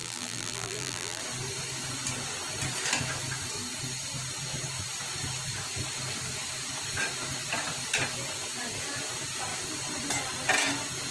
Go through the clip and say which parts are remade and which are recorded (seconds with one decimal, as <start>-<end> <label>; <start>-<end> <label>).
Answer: 0.0-1.2 remade; 1.2-11.1 recorded